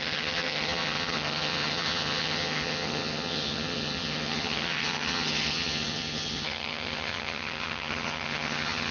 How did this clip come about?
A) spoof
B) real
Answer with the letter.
A